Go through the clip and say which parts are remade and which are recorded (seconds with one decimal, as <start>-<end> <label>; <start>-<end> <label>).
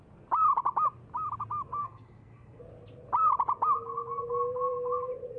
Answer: 0.0-1.8 recorded; 1.8-2.6 remade; 2.6-5.4 recorded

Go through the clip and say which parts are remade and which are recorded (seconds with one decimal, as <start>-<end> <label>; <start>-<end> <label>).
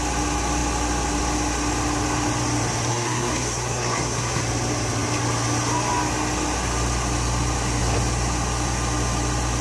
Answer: 0.0-2.9 recorded; 2.9-4.4 remade; 4.4-9.6 recorded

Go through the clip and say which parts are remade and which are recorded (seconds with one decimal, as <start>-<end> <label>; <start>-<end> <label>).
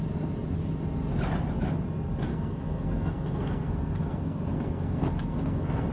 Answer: 0.0-2.3 recorded; 2.3-5.9 remade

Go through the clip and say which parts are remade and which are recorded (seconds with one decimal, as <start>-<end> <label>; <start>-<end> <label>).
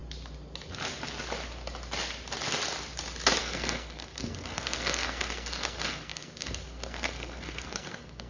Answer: 0.0-3.4 recorded; 3.4-8.3 remade